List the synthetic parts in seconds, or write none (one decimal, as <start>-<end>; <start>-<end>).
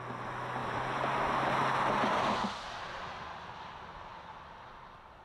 0.6-2.2; 4.1-5.2